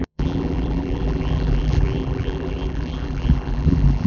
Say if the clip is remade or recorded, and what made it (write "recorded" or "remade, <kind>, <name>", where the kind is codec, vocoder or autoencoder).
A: remade, vocoder, BigVGAN v2